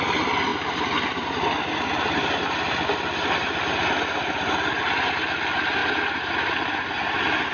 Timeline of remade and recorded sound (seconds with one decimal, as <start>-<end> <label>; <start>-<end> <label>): 0.0-7.5 recorded